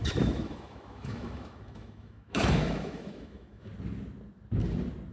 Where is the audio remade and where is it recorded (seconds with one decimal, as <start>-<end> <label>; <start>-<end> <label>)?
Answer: 0.0-3.7 remade; 3.7-5.1 recorded